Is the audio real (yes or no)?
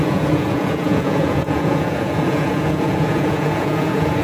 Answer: no